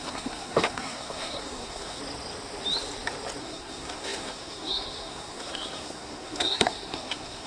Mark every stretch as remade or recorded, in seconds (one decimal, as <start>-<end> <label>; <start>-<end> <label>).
0.0-2.0 remade; 2.0-3.4 recorded; 3.4-7.5 remade